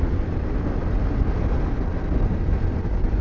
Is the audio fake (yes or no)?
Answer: no